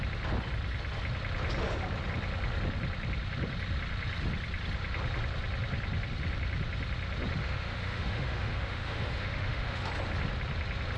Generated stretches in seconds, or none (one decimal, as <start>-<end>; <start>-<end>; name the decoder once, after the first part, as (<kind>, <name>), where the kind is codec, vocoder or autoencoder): 7.4-9.9 (autoencoder, DAC-VAE)